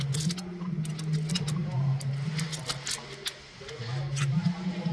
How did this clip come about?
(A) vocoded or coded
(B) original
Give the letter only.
B